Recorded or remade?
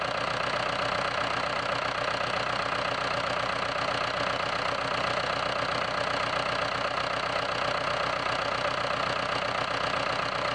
recorded